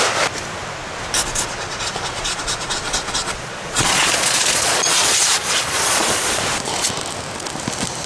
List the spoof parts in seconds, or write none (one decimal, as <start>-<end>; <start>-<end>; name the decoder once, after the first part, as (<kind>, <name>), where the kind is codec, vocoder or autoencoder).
1.5-6.4 (vocoder, Vocos)